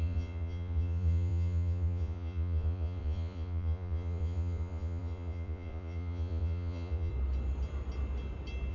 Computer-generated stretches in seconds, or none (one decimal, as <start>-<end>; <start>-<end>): 0.0-7.1